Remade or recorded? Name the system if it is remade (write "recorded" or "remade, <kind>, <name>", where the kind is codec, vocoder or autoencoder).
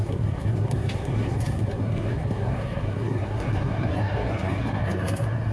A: remade, codec, SNAC